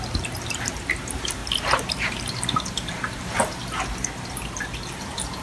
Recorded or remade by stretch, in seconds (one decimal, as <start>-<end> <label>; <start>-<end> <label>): 0.0-1.4 remade; 1.4-1.9 recorded; 1.9-3.6 remade; 3.6-4.9 recorded; 4.9-5.4 remade